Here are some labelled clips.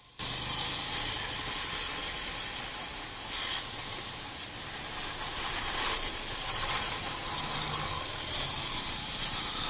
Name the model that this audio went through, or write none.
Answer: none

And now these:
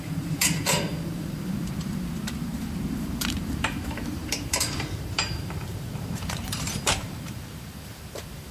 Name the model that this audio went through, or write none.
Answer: vocoder, BigVGAN v2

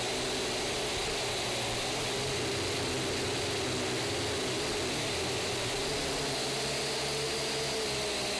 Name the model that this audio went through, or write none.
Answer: none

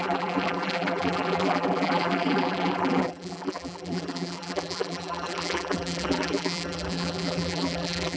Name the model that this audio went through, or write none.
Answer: vocoder, BigVGAN v2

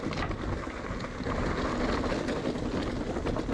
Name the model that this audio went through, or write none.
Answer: none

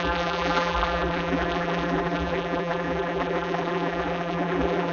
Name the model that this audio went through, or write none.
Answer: vocoder, BigVGAN v2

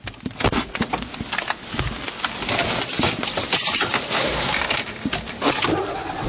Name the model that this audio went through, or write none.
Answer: vocoder, BigVGAN v2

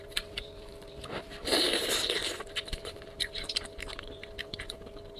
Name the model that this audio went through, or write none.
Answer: vocoder, BigVGAN v2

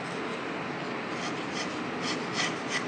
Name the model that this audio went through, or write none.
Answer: none